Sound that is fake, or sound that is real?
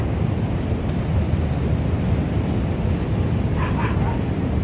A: real